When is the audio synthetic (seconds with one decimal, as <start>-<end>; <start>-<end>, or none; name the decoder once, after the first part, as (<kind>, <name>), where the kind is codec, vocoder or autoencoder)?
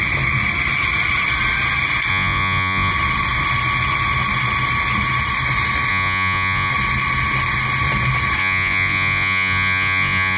2.1-2.9 (vocoder, Vocos); 5.9-6.7; 8.4-10.4